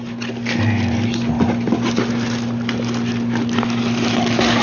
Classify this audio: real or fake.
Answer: real